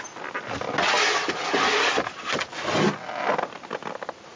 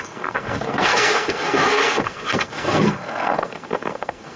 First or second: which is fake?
second